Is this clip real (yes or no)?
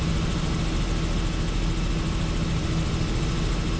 yes